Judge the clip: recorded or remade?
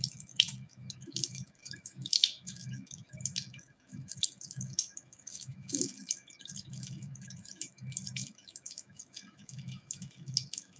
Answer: remade